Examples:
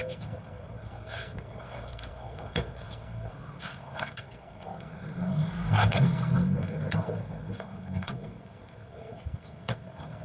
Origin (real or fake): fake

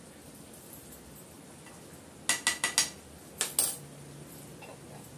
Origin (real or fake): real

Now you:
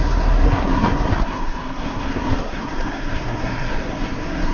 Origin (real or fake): fake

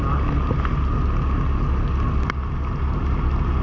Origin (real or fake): real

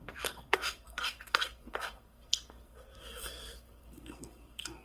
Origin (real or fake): fake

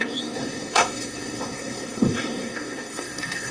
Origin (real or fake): fake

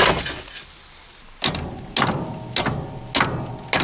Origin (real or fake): real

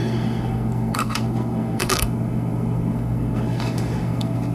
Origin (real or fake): fake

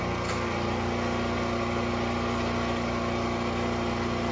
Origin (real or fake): real